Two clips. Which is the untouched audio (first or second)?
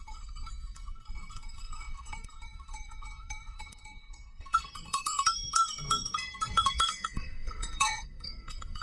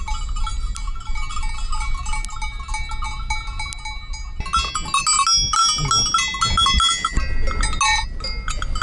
second